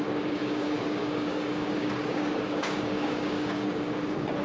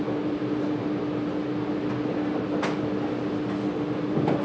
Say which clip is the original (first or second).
second